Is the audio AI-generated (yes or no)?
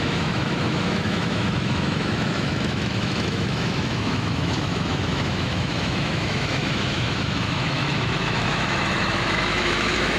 yes